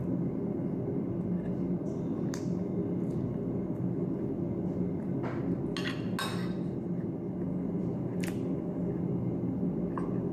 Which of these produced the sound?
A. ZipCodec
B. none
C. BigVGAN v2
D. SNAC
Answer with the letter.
B